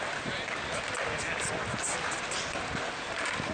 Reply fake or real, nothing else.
real